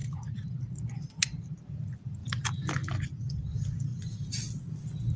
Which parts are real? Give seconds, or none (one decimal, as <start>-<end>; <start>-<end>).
1.1-5.2